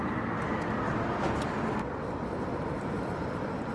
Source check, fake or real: fake